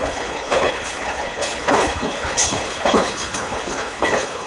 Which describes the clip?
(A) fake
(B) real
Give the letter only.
A